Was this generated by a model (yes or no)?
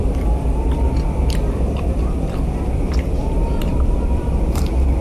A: yes